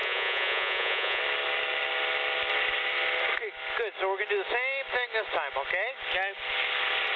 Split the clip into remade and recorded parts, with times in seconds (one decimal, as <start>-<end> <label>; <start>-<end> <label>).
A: 0.0-1.2 remade; 1.2-7.2 recorded